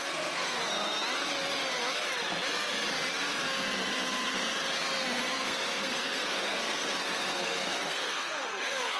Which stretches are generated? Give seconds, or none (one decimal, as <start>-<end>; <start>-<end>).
0.0-0.6; 5.3-9.0

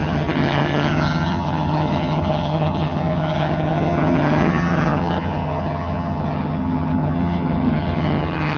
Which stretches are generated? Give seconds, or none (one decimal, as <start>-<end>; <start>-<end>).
0.0-8.6

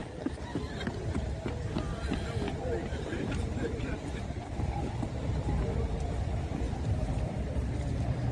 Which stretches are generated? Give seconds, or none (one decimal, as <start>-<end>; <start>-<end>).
none

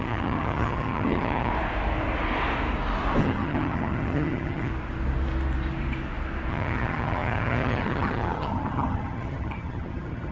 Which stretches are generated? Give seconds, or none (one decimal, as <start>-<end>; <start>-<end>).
0.0-1.5; 3.2-4.7; 6.5-10.3